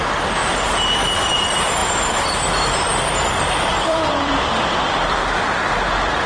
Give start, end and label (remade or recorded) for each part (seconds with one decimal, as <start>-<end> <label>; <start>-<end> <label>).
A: 0.0-0.4 recorded; 0.4-1.3 remade; 1.3-1.8 recorded; 1.8-5.6 remade; 5.6-6.3 recorded